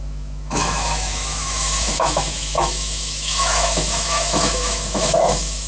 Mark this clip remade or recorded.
remade